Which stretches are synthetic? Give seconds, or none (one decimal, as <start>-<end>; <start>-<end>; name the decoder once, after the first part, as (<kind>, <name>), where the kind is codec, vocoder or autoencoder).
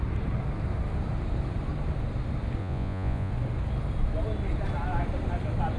2.6-3.3 (vocoder, Vocos)